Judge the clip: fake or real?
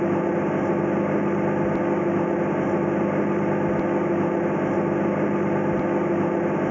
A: real